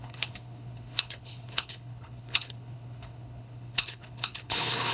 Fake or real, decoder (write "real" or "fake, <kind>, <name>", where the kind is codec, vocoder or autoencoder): fake, codec, HILCodec